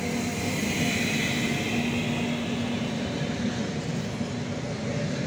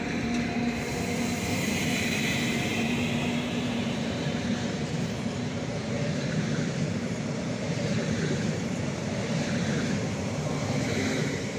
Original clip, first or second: first